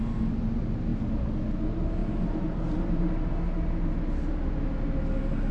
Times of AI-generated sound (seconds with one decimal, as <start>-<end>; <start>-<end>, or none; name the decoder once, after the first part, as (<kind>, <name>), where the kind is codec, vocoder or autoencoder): 2.0-3.3 (vocoder, BigVGAN v2)